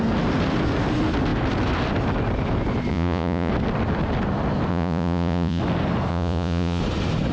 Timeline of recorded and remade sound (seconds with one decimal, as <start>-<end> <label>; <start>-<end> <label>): 0.0-2.9 recorded; 2.9-3.5 remade; 3.5-4.7 recorded; 4.7-5.6 remade; 5.6-6.1 recorded; 6.1-6.8 remade; 6.8-7.3 recorded